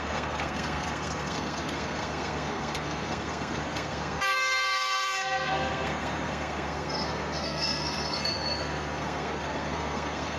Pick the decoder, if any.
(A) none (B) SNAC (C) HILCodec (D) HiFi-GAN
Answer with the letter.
B